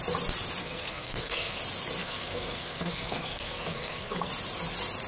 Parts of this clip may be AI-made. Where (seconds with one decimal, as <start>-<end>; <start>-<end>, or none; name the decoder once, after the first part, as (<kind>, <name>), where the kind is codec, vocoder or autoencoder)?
0.6-1.6 (codec, SNAC); 2.0-4.3